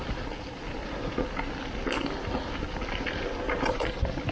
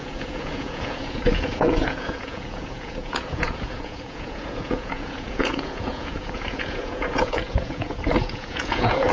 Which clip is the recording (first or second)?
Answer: first